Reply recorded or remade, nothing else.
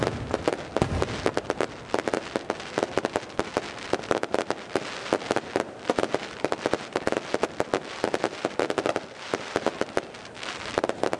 recorded